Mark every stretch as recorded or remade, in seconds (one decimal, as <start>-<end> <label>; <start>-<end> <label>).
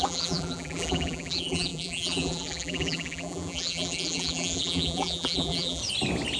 0.0-5.8 remade; 5.8-6.4 recorded